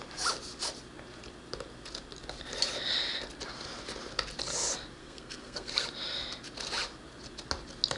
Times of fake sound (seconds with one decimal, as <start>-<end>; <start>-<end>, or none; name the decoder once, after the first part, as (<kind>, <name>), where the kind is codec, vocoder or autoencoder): 5.0-5.7 (codec, SNAC)